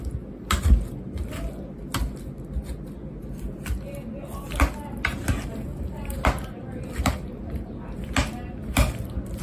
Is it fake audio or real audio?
real